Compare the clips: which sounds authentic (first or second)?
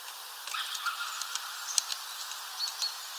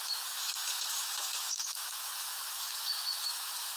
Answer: first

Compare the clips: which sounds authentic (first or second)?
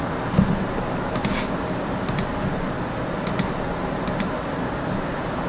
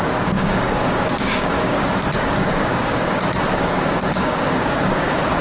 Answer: first